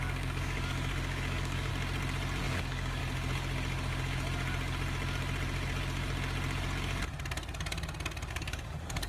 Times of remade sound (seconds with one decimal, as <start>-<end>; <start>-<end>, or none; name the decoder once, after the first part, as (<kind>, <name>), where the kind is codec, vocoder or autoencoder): 0.0-1.7 (codec, DAC); 2.4-3.0; 8.3-9.1